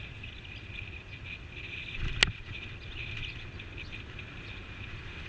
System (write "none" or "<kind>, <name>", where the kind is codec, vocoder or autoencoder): none